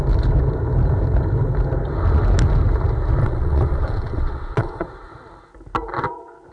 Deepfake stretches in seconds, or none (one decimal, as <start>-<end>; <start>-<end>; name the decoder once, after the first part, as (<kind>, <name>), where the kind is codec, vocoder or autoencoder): 3.2-4.9 (vocoder, WaveNeXt)